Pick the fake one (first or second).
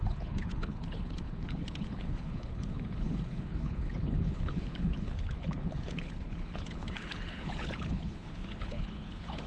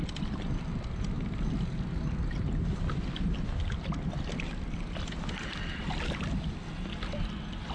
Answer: first